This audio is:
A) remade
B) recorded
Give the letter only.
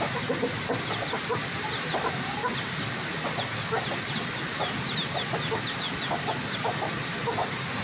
B